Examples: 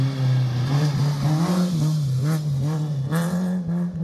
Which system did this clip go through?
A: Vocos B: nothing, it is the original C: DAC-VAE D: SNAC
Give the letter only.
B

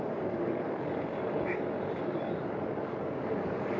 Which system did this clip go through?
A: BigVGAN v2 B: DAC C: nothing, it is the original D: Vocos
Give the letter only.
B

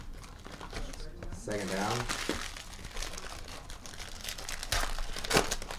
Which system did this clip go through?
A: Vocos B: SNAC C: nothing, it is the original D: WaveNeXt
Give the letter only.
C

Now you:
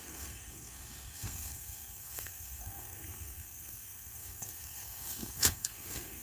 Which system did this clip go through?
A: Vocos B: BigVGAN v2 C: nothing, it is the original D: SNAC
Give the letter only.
D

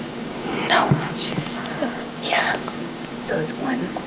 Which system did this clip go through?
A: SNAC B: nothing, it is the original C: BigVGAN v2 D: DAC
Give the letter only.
D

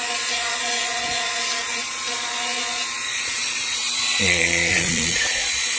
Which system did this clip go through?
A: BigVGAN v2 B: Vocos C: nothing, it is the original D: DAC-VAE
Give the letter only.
B